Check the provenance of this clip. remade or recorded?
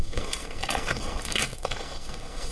remade